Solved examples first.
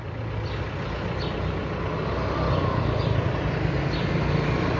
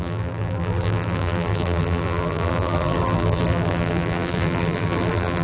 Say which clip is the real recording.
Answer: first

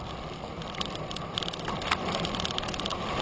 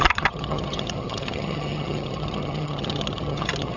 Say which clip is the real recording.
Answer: first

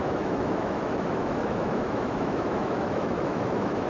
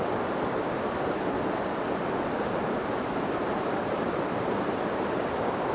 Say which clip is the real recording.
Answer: second